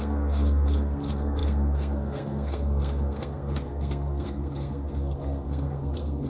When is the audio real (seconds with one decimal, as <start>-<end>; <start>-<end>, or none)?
none